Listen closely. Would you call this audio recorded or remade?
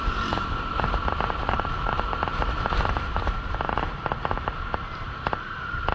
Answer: remade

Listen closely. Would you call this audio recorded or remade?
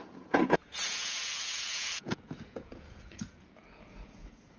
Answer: remade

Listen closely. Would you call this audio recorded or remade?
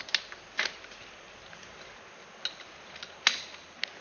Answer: recorded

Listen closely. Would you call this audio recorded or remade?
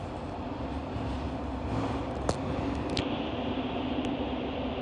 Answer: recorded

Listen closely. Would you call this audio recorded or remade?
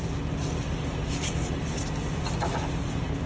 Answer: recorded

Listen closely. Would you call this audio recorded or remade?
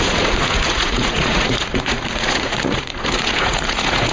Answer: remade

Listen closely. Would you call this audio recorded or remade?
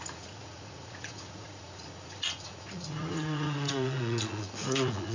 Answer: remade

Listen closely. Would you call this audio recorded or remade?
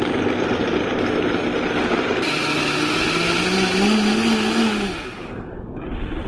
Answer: recorded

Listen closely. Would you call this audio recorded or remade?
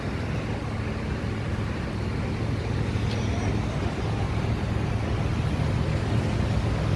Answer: recorded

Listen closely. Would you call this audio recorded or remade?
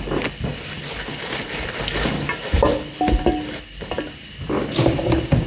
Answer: recorded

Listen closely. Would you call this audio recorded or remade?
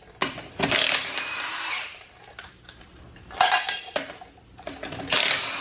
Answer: recorded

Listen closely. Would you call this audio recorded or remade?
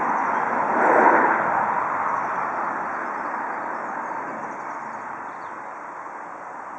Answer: recorded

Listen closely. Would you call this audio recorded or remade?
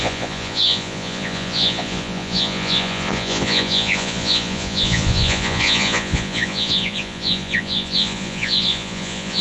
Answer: remade